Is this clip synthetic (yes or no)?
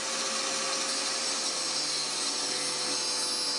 no